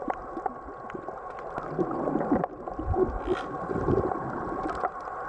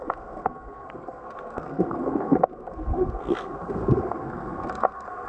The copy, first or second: second